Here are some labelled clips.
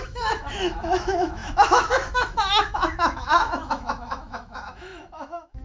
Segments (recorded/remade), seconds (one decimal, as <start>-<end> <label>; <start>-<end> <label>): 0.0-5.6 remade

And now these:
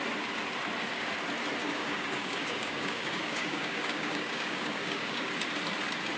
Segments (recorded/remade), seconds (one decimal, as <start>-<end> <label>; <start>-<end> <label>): 0.0-1.6 recorded; 1.6-5.3 remade; 5.3-6.2 recorded

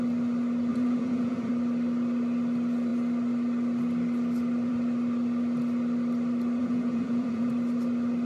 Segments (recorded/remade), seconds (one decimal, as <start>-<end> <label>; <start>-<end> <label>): 0.0-0.7 recorded; 0.7-1.5 remade; 1.5-6.6 recorded; 6.6-7.5 remade; 7.5-8.2 recorded